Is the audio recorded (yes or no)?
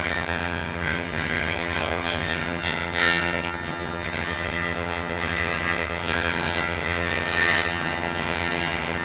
no